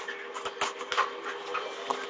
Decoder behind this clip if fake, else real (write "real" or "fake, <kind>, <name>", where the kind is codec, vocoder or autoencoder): real